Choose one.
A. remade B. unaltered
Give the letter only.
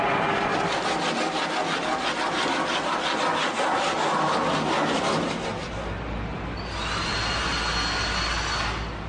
B